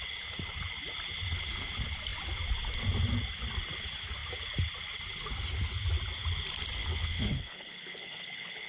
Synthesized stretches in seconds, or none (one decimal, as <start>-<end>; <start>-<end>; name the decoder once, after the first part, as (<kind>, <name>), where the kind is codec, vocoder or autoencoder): 6.8-8.7 (codec, HILCodec)